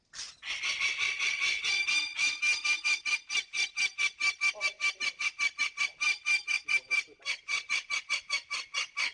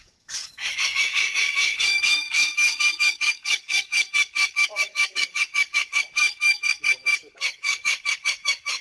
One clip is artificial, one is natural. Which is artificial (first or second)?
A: second